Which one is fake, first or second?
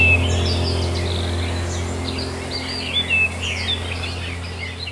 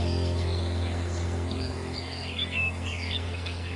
second